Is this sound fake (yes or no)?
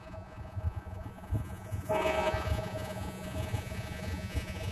yes